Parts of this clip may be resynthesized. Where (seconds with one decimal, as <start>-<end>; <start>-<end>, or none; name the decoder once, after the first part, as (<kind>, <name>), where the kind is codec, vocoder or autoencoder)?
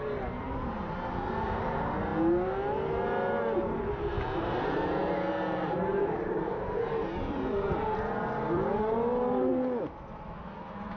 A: 0.0-2.1 (vocoder, BigVGAN v2); 3.4-9.5; 10.6-11.0